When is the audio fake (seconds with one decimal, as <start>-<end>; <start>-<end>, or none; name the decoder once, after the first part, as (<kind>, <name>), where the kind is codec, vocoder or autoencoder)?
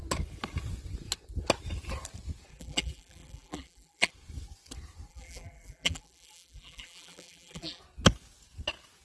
2.5-4.1 (vocoder, BigVGAN v2); 5.1-7.8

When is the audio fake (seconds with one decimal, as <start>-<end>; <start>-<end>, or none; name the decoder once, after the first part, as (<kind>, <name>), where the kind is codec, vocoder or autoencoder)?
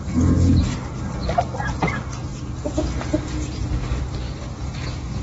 none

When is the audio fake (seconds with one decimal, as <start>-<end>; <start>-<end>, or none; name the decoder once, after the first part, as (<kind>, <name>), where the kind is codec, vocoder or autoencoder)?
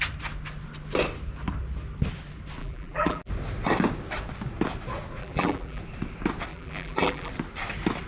2.6-3.3 (vocoder, BigVGAN v2); 5.2-5.8; 6.5-7.3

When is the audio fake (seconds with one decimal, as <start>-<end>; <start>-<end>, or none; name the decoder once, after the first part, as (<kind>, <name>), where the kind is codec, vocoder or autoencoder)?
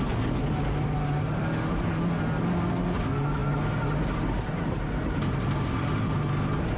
none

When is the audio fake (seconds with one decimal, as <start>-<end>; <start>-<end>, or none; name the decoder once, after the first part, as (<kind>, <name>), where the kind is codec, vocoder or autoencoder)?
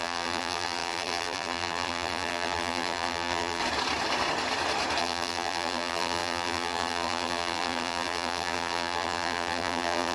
0.0-3.6 (vocoder, BigVGAN v2); 5.0-10.1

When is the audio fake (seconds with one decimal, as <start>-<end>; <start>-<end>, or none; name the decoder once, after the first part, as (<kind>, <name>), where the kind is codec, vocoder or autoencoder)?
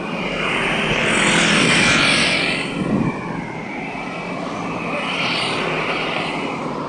0.0-1.0 (vocoder, BigVGAN v2); 5.1-6.9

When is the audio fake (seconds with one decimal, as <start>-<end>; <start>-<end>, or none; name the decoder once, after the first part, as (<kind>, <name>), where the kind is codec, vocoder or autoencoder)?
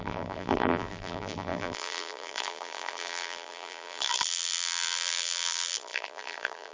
0.0-6.7 (vocoder, BigVGAN v2)